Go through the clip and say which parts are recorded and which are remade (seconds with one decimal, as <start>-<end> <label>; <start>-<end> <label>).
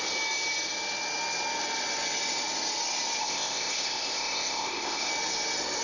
0.0-3.2 recorded; 3.2-5.1 remade; 5.1-5.8 recorded